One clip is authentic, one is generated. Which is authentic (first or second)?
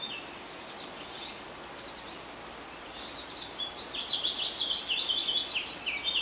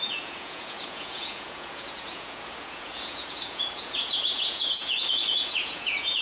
first